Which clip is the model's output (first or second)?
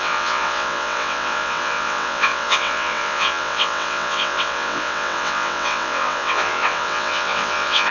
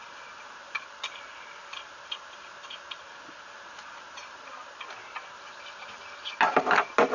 first